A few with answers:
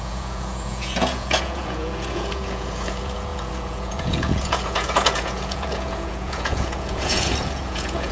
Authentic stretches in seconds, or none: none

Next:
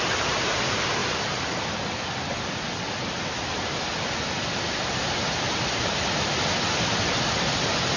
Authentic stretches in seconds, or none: 0.0-8.0

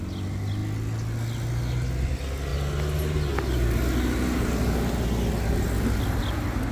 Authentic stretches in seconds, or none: 0.0-6.7

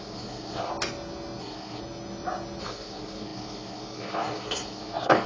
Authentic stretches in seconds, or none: 0.7-1.4; 1.8-2.6